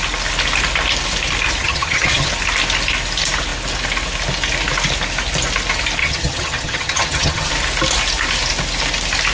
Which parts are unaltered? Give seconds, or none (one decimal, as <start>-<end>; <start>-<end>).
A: 0.0-1.6; 2.3-6.0; 7.5-9.3